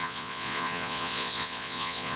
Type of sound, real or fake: fake